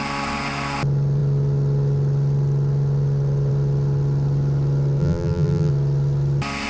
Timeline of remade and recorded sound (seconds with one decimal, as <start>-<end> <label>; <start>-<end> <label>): 0.0-5.0 recorded; 5.0-5.7 remade; 5.7-6.7 recorded